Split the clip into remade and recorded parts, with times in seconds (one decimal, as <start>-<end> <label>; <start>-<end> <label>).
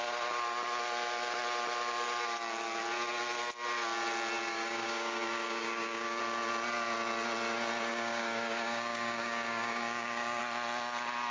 0.0-4.5 recorded; 4.5-6.2 remade; 6.2-7.9 recorded; 7.9-10.4 remade; 10.4-11.3 recorded